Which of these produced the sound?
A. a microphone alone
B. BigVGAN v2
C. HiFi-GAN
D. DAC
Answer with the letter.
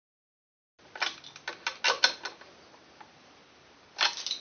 A